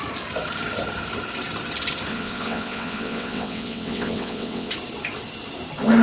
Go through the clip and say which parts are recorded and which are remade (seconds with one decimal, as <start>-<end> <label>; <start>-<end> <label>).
0.0-2.1 recorded; 2.1-4.7 remade; 4.7-6.0 recorded